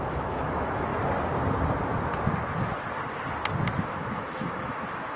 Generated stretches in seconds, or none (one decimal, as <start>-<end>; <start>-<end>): 0.0-0.9; 3.8-5.2